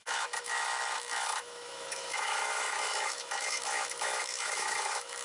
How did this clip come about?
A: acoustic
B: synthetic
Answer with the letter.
B